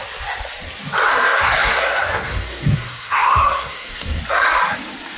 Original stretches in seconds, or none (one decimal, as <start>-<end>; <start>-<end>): 0.0-1.1; 4.2-5.2